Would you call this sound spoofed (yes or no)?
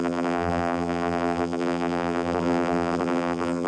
yes